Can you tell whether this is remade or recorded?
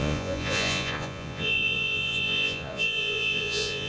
remade